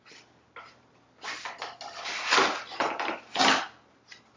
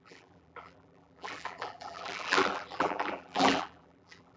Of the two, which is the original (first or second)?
first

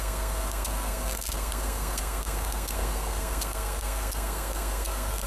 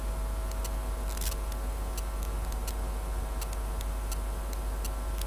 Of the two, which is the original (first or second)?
second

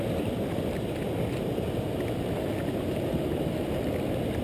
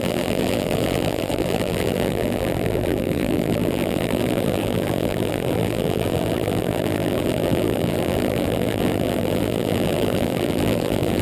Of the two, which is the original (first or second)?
first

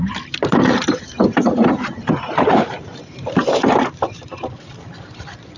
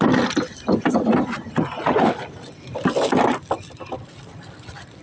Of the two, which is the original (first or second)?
second